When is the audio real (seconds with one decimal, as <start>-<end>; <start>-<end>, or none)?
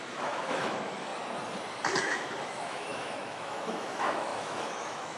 1.1-2.0